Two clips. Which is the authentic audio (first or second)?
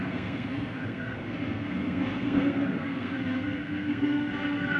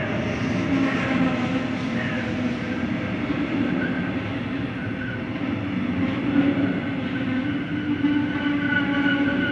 second